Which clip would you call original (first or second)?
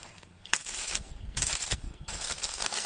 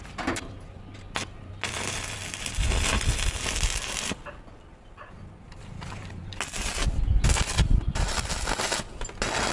second